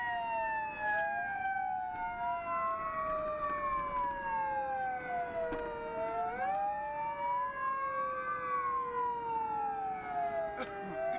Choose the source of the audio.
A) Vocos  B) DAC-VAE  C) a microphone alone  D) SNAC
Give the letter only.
C